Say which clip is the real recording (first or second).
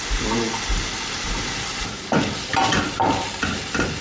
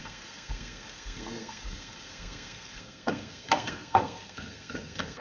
first